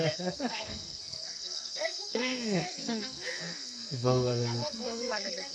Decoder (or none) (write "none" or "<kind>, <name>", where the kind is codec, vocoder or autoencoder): codec, SNAC